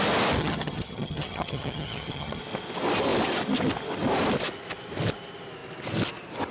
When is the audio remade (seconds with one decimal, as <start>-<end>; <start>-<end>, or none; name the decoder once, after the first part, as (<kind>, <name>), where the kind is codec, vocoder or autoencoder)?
0.4-2.4 (vocoder, HiFi-GAN)